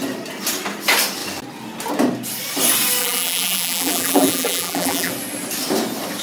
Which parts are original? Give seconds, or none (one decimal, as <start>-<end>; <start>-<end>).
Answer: 0.0-3.0; 5.1-6.2